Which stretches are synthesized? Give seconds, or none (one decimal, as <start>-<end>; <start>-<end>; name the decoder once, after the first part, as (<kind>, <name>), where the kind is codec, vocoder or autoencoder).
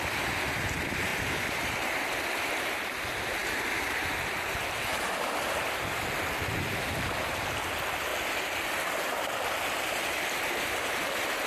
1.1-2.1 (vocoder, BigVGAN v2); 3.4-4.3; 8.1-9.9